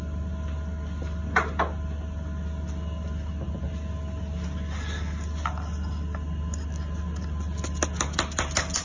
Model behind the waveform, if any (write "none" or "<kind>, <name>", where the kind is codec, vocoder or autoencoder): none